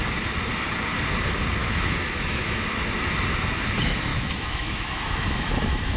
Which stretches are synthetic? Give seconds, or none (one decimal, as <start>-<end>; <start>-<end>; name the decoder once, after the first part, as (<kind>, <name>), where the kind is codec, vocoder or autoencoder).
1.6-2.7 (autoencoder, DAC-VAE); 4.1-6.0